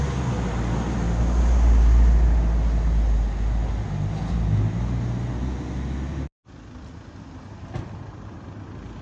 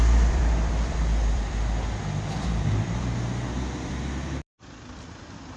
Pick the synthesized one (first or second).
second